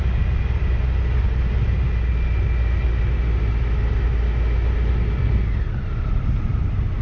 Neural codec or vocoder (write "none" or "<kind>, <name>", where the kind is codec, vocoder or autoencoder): none